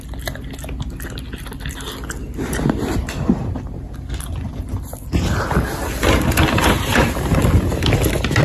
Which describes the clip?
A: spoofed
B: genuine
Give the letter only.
B